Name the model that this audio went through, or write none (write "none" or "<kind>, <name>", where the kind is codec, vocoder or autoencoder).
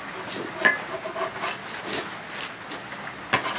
none